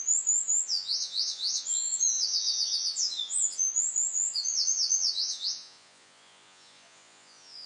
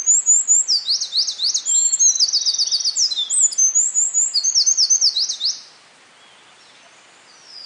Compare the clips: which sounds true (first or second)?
second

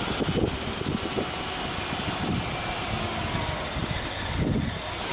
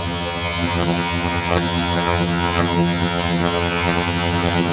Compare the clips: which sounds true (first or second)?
first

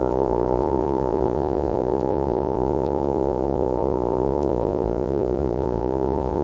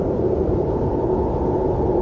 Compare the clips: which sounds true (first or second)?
second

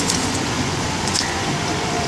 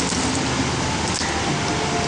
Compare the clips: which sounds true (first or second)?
second